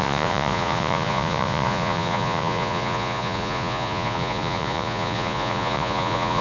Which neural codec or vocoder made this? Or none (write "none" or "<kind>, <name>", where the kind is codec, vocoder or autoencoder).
vocoder, Vocos